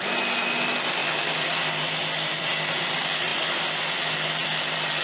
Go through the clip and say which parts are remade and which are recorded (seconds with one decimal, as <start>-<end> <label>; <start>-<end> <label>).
0.0-5.0 recorded

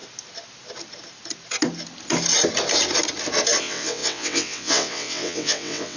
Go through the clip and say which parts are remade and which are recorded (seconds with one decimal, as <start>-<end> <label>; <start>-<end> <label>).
0.0-3.6 recorded; 3.6-6.0 remade

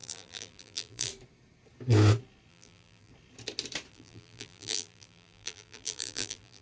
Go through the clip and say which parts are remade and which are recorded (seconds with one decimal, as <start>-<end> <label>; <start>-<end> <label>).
0.0-1.1 remade; 1.1-2.5 recorded; 2.5-3.1 remade; 3.1-3.9 recorded; 3.9-6.6 remade